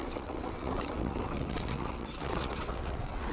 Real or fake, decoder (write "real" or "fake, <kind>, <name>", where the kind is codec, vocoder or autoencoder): fake, vocoder, WaveNeXt